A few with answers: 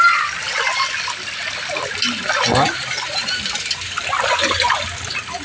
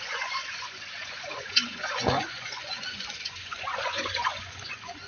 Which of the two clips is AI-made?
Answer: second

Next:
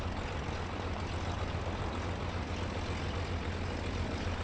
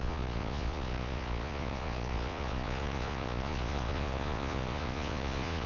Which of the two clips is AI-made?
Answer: second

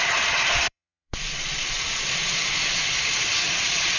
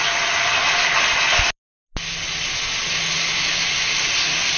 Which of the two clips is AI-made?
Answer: first